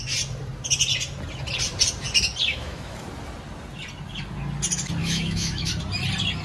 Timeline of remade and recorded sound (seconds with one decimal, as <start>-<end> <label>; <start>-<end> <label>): 0.0-2.5 recorded; 2.5-3.1 remade; 3.1-5.0 recorded; 5.0-5.7 remade; 5.7-6.4 recorded